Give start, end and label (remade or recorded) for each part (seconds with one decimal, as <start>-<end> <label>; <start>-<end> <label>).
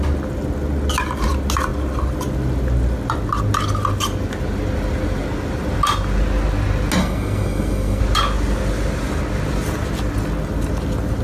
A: 0.0-7.0 recorded; 7.0-8.0 remade; 8.0-11.2 recorded